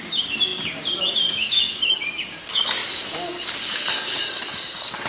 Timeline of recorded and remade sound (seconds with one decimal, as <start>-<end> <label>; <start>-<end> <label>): 0.0-5.1 remade